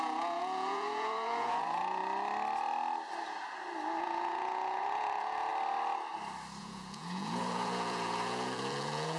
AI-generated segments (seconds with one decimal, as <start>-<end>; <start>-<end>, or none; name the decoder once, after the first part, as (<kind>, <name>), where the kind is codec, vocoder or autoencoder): 0.0-2.0 (vocoder, Vocos); 4.0-5.5; 6.6-9.2